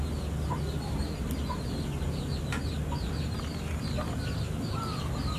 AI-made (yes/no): no